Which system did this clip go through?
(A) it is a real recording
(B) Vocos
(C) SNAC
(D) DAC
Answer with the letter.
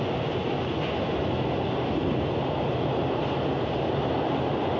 A